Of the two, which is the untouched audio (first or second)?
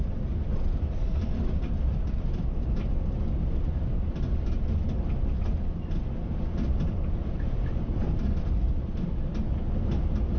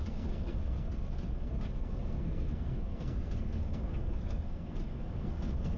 first